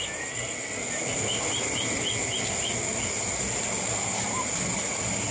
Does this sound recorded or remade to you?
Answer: recorded